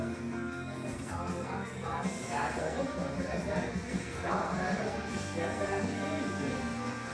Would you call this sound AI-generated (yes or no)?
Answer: yes